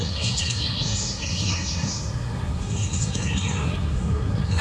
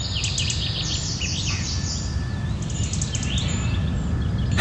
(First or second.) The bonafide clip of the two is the second